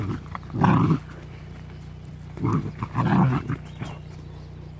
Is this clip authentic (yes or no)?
yes